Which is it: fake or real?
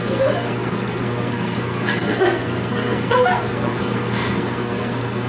fake